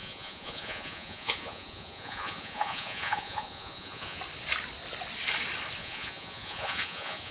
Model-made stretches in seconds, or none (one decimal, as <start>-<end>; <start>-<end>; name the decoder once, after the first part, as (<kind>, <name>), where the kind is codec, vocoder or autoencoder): 0.0-4.2 (vocoder, Vocos); 5.8-7.3